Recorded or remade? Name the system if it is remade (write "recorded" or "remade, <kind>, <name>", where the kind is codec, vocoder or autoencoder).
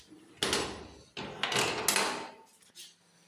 recorded